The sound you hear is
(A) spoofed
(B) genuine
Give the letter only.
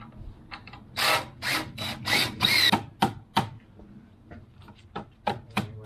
B